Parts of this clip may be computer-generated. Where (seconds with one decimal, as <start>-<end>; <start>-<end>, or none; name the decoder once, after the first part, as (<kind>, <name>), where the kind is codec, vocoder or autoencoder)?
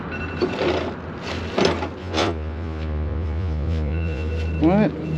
2.0-4.3 (vocoder, Vocos)